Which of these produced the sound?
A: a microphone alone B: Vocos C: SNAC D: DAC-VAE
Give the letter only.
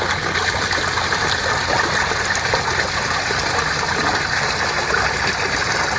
A